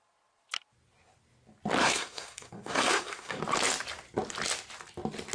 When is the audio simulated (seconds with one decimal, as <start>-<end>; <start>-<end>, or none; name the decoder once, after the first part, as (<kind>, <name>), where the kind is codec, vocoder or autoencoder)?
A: 1.8-3.4 (codec, SNAC)